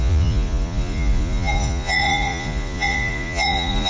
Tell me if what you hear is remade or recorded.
remade